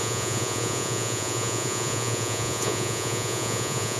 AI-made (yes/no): yes